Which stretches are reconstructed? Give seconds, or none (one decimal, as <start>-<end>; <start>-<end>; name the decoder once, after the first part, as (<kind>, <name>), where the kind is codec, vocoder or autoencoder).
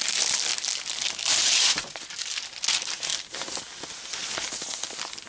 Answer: none